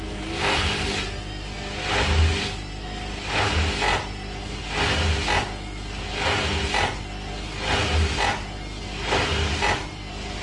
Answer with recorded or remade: recorded